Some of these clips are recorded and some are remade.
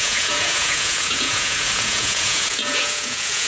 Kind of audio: remade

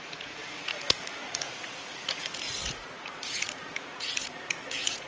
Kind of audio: remade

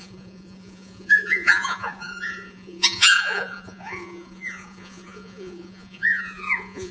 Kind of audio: remade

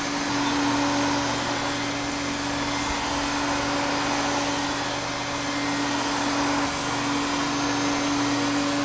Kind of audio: recorded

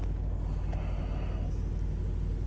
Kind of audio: recorded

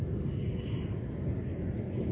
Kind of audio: recorded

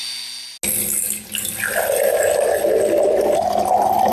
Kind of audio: recorded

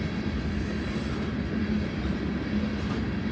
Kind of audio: recorded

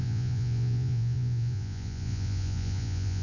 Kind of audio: remade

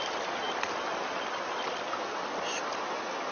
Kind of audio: recorded